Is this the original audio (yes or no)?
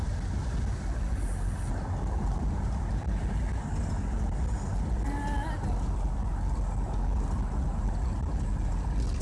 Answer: yes